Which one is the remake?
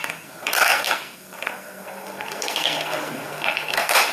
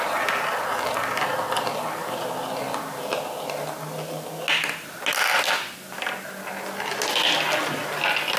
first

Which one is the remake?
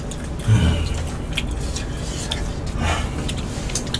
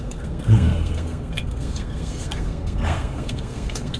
second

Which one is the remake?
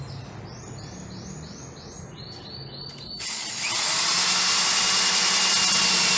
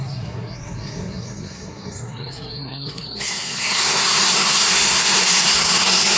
second